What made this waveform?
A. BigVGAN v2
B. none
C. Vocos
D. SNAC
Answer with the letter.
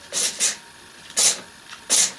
B